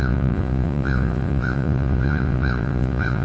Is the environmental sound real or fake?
fake